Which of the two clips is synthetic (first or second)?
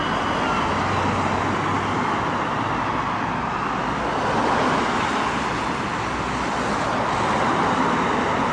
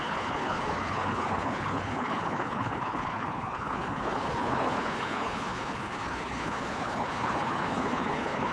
second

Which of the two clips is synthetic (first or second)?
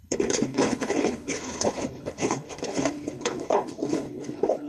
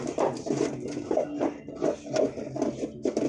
first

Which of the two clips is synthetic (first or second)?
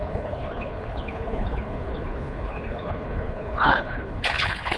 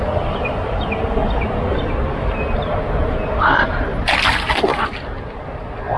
first